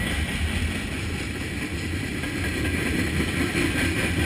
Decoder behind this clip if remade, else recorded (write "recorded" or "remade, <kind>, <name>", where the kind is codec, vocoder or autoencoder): recorded